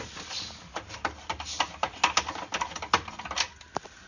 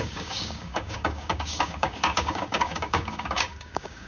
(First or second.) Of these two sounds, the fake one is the second